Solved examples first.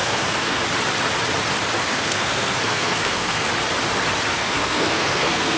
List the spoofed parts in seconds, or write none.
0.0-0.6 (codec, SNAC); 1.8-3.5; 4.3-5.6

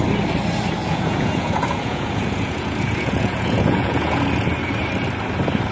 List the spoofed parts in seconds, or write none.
0.8-4.2 (vocoder, Vocos)